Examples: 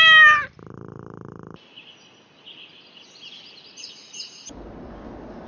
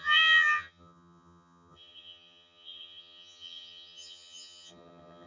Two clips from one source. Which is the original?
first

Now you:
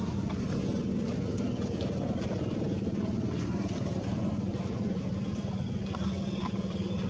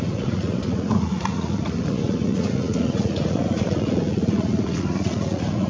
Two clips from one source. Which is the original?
first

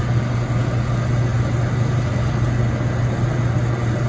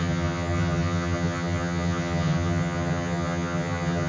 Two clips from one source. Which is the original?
first